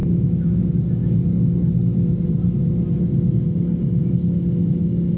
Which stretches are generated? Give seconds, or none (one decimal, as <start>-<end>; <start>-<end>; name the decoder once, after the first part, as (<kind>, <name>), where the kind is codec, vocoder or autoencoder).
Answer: 0.0-0.6 (codec, DAC)